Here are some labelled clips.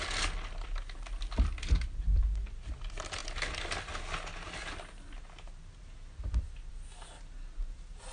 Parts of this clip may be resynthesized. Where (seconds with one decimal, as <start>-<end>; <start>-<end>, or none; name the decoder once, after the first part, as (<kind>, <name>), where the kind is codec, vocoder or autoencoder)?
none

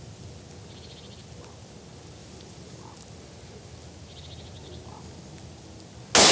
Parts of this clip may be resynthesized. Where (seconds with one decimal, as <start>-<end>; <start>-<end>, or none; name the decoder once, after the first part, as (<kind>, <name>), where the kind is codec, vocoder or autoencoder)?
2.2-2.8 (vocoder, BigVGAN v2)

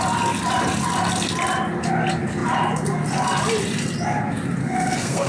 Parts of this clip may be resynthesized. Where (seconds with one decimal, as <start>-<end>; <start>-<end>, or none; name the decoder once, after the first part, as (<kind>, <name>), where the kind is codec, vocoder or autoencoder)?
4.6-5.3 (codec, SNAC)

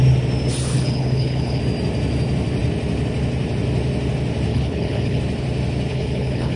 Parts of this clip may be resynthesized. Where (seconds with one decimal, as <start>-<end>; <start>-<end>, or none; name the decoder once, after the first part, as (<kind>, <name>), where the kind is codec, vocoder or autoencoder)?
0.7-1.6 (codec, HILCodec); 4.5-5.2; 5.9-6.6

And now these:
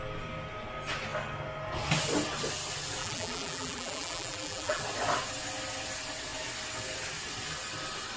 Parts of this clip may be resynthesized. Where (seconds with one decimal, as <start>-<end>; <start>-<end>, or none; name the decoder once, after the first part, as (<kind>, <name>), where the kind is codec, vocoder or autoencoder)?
3.0-4.8 (vocoder, BigVGAN v2)

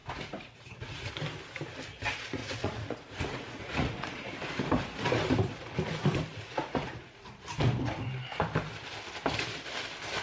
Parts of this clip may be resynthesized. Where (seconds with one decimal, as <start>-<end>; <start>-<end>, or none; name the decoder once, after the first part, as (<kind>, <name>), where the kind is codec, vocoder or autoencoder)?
0.0-1.1 (vocoder, Vocos); 2.4-4.3; 6.3-7.4